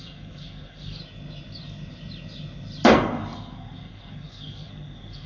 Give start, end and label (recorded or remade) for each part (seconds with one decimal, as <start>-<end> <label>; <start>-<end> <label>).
0.0-1.0 remade; 1.0-2.9 recorded; 2.9-5.3 remade